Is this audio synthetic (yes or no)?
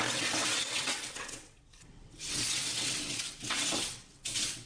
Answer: yes